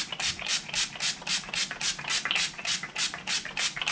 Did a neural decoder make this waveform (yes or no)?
no